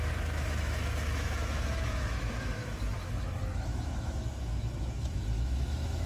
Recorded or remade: remade